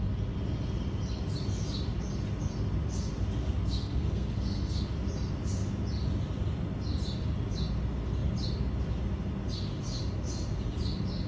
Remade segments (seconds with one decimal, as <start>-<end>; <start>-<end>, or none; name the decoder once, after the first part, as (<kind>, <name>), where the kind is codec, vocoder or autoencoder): 3.4-4.8 (codec, SNAC)

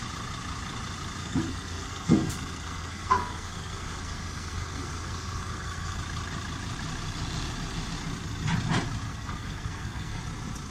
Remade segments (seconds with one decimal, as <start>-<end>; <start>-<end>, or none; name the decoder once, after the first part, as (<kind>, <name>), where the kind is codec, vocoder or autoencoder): 1.2-6.0 (codec, SNAC); 9.1-10.2

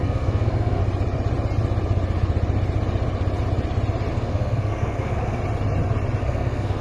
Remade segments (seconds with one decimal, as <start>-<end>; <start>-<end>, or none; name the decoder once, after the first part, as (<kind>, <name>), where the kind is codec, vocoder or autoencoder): 0.0-0.8 (codec, SNAC); 4.1-5.4; 6.2-6.8

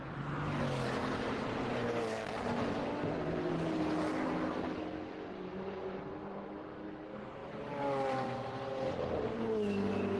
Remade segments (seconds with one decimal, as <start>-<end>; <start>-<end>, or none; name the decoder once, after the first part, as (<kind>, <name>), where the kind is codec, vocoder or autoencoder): none

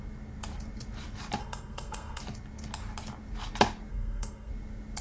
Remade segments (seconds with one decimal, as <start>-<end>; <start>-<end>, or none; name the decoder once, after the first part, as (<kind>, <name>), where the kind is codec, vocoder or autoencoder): 1.4-2.2 (codec, SNAC); 3.9-4.5

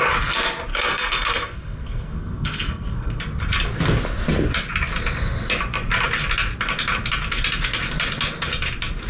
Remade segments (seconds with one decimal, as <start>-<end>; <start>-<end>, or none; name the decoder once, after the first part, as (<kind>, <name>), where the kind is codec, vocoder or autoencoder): 0.7-3.2 (codec, SNAC)

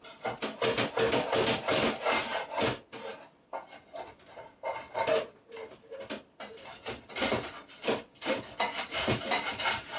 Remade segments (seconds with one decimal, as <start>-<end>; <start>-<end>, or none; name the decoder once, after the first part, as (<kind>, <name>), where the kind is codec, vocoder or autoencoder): none